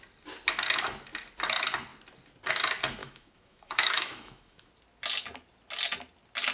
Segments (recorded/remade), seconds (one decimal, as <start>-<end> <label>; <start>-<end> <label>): 0.0-3.0 recorded; 3.0-4.7 remade; 4.7-6.5 recorded